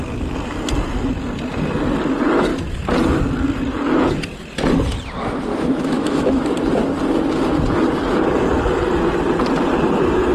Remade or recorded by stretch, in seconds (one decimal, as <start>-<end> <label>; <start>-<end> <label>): 0.0-5.5 recorded; 5.5-6.4 remade; 6.4-10.3 recorded